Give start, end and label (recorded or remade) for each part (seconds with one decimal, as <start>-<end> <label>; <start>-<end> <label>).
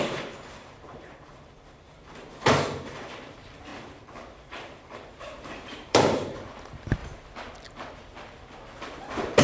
0.0-3.7 remade; 3.7-4.5 recorded; 4.5-7.0 remade; 7.0-9.4 recorded